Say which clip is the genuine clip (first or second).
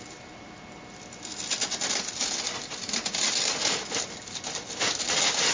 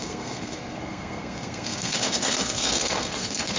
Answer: first